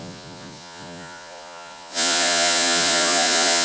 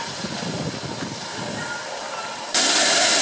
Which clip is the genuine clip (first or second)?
second